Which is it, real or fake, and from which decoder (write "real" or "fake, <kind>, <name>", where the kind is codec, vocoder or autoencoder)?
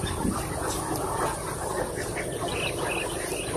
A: real